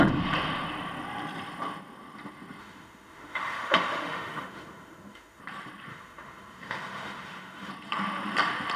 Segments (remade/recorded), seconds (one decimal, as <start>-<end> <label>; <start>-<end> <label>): 0.0-2.6 recorded; 2.6-5.4 remade; 5.4-5.9 recorded; 5.9-7.7 remade; 7.7-8.8 recorded